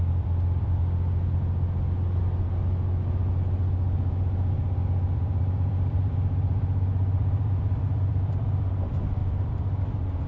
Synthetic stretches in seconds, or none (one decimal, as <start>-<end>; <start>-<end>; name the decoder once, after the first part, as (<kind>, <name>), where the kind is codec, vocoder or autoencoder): 0.0-0.8 (vocoder, BigVGAN v2); 4.8-10.3